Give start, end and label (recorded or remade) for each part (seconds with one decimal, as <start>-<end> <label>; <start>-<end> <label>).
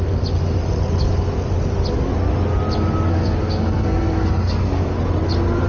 0.0-3.1 recorded; 3.1-4.8 remade; 4.8-5.7 recorded